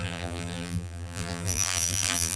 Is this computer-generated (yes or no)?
yes